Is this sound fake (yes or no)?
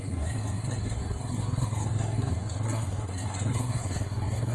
yes